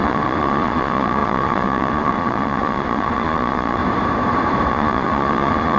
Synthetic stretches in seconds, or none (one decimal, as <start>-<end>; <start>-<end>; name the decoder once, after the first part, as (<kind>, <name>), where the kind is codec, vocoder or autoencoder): 0.0-3.8 (vocoder, Vocos); 4.7-5.8